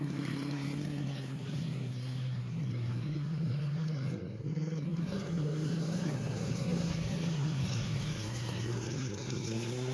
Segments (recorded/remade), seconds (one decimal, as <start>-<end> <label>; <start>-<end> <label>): 0.0-9.9 remade